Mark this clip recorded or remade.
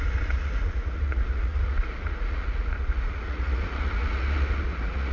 remade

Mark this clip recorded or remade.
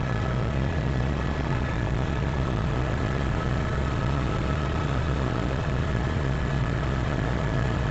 remade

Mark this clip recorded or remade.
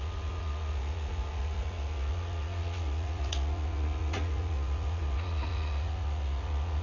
remade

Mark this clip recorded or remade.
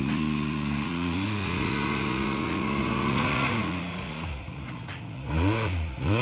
remade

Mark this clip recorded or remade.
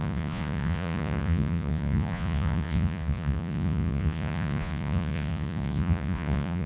remade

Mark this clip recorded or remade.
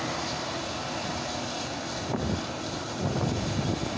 recorded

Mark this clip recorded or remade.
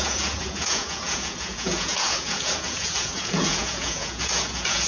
remade